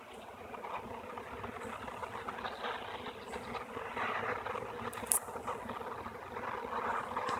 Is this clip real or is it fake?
real